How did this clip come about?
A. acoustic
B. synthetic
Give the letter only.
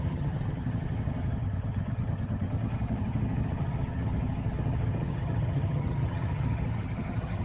B